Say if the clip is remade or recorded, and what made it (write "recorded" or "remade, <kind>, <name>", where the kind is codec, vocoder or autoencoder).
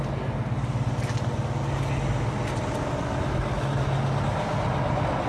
recorded